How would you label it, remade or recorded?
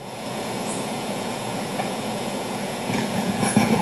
remade